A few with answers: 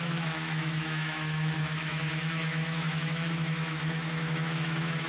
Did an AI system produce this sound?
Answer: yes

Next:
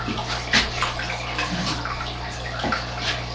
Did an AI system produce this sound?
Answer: no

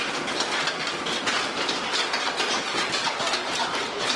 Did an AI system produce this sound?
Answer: no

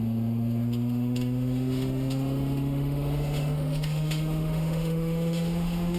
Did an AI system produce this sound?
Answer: yes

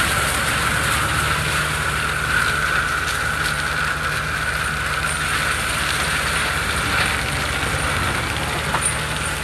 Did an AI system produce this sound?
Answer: no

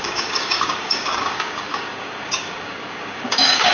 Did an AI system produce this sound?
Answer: yes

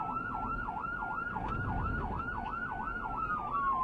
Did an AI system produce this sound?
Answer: no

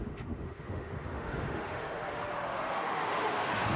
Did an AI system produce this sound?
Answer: yes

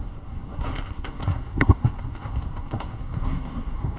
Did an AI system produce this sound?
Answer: yes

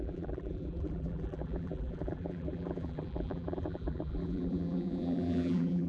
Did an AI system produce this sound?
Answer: yes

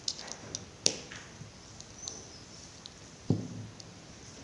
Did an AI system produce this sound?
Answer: no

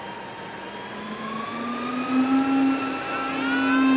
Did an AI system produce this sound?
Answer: no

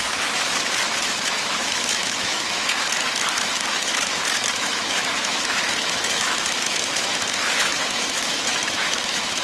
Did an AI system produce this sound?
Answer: yes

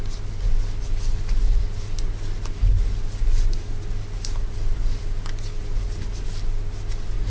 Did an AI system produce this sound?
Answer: no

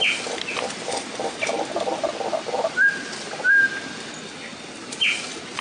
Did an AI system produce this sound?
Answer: no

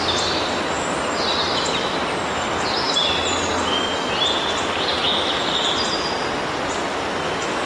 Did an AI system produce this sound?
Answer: no